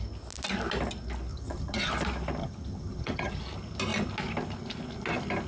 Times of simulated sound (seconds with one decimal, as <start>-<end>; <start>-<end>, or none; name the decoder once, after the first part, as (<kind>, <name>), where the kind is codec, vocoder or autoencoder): 1.3-1.9 (vocoder, HiFi-GAN); 2.4-3.4